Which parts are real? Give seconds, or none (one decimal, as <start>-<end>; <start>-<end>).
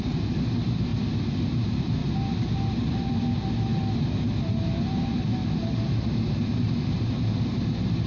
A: 0.9-1.5; 2.0-3.9